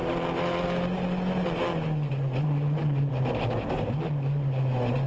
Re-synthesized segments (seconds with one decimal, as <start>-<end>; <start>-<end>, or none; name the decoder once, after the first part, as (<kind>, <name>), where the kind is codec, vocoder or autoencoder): none